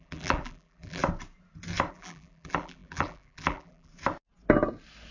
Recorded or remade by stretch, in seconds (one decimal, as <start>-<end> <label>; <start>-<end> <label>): 0.0-1.0 remade; 1.0-1.9 recorded; 1.9-3.9 remade; 3.9-5.1 recorded